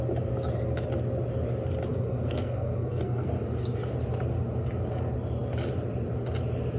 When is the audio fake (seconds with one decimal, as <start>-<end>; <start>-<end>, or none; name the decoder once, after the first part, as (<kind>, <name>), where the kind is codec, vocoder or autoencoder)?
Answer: 1.9-3.3 (codec, SNAC)